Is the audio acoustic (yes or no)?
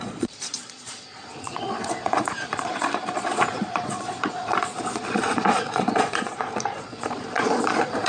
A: no